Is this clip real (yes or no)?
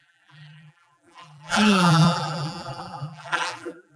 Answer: no